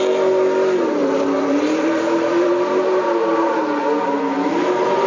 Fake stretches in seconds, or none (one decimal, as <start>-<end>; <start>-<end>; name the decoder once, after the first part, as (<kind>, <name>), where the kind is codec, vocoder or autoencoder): 1.0-2.5 (vocoder, BigVGAN v2)

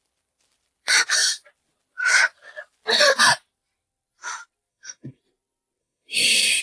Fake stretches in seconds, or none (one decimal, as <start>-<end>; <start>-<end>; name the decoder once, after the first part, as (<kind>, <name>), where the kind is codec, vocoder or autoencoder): 4.7-5.2 (codec, SNAC); 5.8-6.6

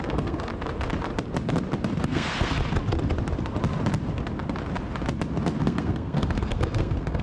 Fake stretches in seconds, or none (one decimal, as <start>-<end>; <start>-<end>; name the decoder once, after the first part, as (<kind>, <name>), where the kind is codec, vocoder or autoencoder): 0.0-0.5 (codec, SNAC); 2.0-2.6; 5.6-7.2

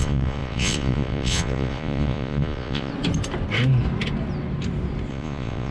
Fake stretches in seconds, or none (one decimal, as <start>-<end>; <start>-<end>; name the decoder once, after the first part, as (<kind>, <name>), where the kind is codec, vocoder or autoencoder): 0.0-2.9 (vocoder, Vocos); 5.1-5.7